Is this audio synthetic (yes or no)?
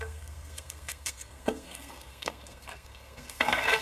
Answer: yes